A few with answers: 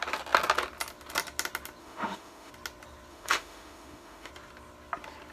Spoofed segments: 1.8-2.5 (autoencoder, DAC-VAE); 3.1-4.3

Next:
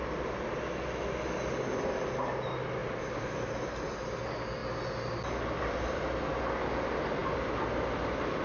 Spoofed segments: 2.8-3.7 (vocoder, BigVGAN v2)